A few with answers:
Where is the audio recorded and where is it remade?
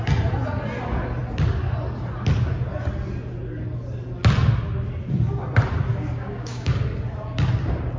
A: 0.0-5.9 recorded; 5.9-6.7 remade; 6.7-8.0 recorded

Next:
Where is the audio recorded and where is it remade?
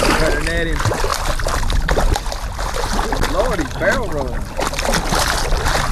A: 0.0-5.9 recorded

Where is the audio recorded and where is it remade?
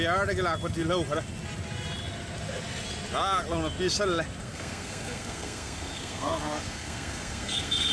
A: 0.0-4.4 recorded; 4.4-7.9 remade